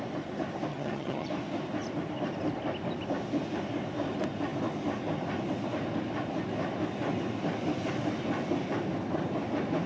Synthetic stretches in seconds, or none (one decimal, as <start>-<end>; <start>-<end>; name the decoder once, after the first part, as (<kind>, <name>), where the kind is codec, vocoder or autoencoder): 0.7-1.3 (vocoder, HiFi-GAN)